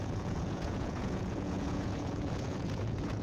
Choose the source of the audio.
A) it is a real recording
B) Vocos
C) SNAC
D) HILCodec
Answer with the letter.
B